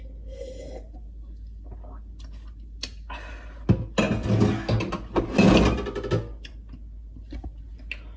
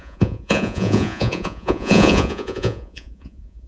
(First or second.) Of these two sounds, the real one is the first